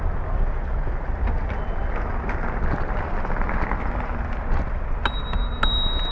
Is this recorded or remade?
recorded